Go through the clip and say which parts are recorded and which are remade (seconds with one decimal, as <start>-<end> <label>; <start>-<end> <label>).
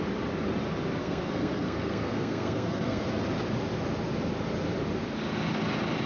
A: 0.0-1.0 recorded; 1.0-3.1 remade; 3.1-6.1 recorded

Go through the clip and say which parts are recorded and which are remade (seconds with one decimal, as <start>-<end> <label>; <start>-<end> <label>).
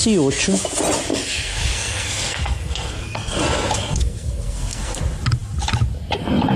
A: 0.0-1.1 recorded; 1.1-5.0 remade; 5.0-6.6 recorded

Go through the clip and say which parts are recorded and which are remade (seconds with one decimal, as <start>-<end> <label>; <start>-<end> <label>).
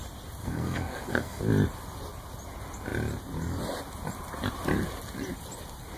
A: 0.0-0.4 recorded; 0.4-1.4 remade; 1.4-6.0 recorded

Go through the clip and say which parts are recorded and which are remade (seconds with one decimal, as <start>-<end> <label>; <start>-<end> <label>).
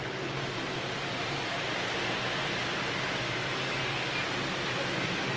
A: 0.0-5.4 recorded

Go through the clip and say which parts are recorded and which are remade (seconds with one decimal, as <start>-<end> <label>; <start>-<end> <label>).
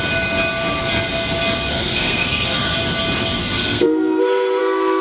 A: 0.0-1.7 recorded; 1.7-2.8 remade; 2.8-3.4 recorded; 3.4-4.6 remade; 4.6-5.0 recorded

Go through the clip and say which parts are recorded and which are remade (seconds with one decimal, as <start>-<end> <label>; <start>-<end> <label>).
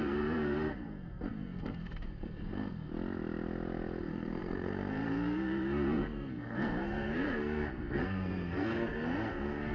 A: 0.0-2.9 remade; 2.9-4.0 recorded; 4.0-9.7 remade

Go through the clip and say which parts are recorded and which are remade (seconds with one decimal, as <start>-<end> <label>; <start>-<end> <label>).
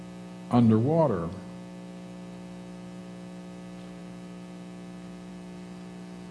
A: 0.0-6.3 recorded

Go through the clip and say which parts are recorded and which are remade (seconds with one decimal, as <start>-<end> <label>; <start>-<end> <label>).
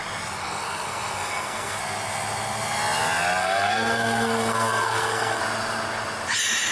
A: 0.0-0.4 recorded; 0.4-1.8 remade; 1.8-3.4 recorded; 3.4-5.4 remade; 5.4-6.7 recorded